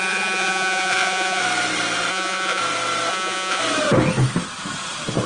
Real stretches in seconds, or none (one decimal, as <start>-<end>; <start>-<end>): 1.4-2.1; 2.6-3.1; 3.6-5.3